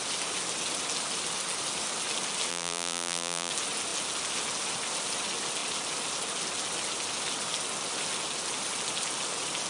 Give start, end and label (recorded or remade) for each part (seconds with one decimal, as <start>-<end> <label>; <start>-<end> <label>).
0.0-2.5 recorded; 2.5-3.5 remade; 3.5-9.7 recorded